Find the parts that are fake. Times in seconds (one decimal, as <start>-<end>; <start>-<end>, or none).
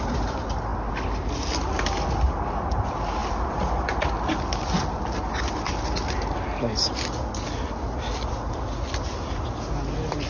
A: none